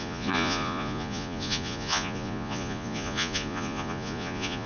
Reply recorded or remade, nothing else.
remade